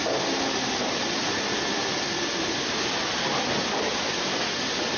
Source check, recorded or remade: recorded